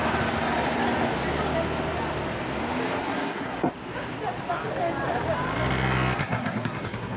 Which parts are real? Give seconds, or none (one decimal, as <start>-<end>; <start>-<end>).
0.0-3.0; 3.7-6.2